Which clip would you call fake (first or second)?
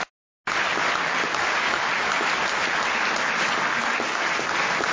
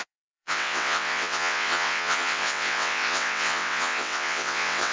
second